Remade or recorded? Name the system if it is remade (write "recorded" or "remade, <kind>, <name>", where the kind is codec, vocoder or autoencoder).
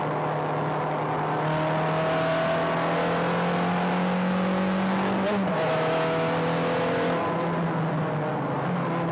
recorded